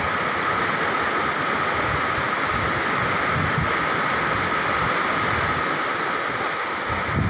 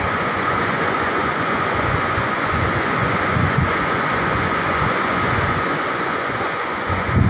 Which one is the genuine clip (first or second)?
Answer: first